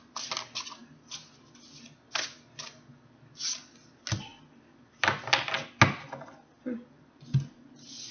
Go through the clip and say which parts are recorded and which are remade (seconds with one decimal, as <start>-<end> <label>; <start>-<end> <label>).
0.0-8.1 recorded